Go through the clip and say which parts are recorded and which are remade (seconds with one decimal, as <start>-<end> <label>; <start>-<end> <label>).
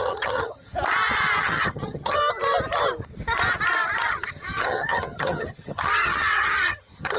0.0-0.7 remade; 0.7-1.4 recorded; 1.4-2.2 remade; 2.2-4.1 recorded; 4.1-7.2 remade